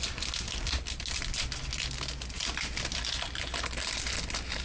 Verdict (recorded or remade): recorded